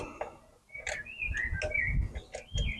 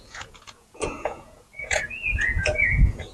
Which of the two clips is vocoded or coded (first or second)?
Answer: second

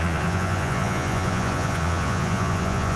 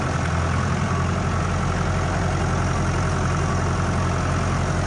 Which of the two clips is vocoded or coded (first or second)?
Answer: first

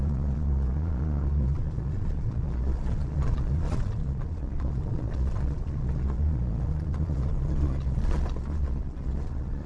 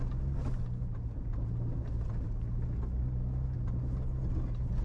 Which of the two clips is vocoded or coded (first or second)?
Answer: first